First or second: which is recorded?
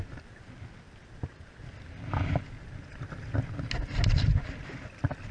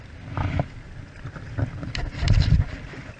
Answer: first